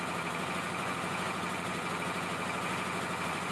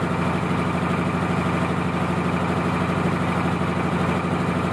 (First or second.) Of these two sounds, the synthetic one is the first